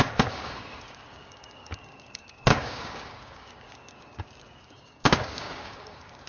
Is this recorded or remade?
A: remade